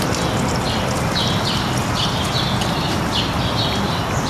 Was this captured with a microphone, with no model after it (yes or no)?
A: yes